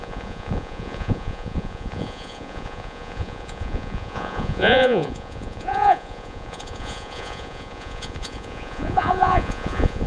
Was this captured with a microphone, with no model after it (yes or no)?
no